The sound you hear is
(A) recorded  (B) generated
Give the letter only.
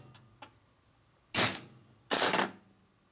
A